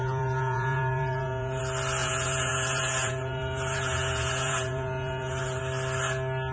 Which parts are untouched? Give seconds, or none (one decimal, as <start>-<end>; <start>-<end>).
1.6-2.0; 5.6-6.5